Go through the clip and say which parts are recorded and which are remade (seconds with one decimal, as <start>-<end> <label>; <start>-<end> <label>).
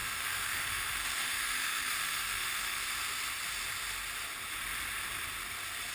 0.0-2.8 remade; 2.8-5.9 recorded